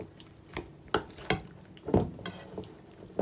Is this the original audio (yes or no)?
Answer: yes